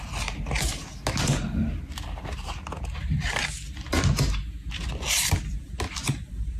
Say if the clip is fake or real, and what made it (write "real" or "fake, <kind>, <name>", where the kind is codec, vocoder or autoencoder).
real